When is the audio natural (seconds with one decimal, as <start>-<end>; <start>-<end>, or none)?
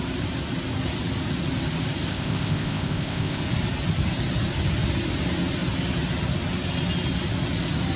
0.0-2.1; 3.4-8.0